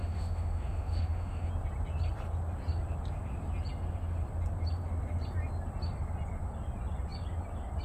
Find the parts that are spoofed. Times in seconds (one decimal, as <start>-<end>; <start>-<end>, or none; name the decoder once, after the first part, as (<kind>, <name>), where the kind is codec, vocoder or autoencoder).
0.0-1.5 (autoencoder, DAC-VAE)